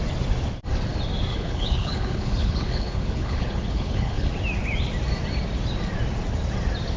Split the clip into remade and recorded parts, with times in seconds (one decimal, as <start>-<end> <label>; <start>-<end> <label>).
0.0-1.3 recorded; 1.3-4.3 remade; 4.3-7.0 recorded